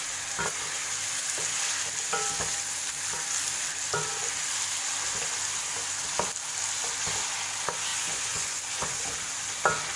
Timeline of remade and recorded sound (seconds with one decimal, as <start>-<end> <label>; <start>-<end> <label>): 0.0-7.9 recorded; 7.9-9.0 remade; 9.0-10.0 recorded